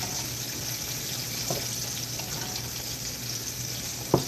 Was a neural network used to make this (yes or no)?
no